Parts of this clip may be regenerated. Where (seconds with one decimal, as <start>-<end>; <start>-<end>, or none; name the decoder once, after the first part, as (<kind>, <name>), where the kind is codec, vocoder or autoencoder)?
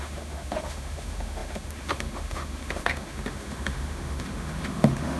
0.0-5.2 (autoencoder, DAC-VAE)